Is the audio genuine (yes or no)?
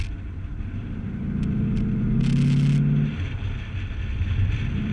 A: yes